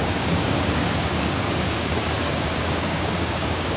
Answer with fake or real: fake